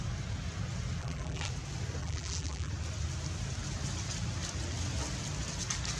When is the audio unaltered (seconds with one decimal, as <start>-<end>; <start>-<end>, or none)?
0.0-1.0; 1.5-2.0; 2.7-6.0